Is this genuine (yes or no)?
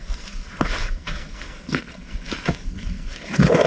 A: no